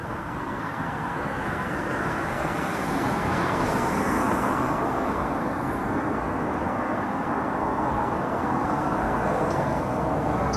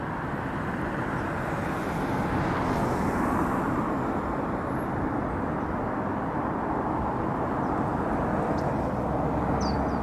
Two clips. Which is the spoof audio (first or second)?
first